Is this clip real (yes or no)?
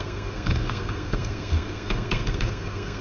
no